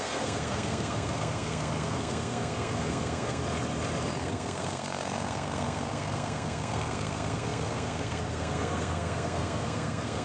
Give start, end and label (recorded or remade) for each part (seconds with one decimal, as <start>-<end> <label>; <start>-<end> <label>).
0.0-3.4 remade; 3.4-4.2 recorded; 4.2-10.2 remade